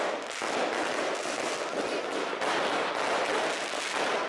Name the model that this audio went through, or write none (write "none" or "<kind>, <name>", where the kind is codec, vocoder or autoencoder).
none